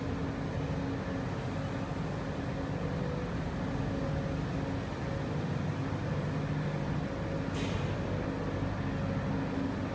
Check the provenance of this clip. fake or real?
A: real